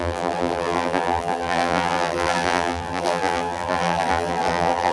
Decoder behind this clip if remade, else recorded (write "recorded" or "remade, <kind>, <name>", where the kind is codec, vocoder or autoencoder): remade, vocoder, BigVGAN v2